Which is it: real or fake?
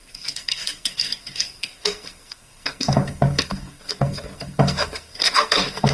fake